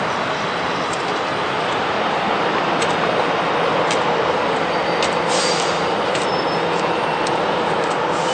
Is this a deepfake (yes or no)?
no